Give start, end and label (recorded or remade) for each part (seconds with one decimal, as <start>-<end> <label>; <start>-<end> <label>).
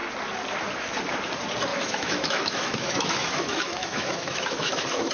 0.0-1.7 recorded; 1.7-5.1 remade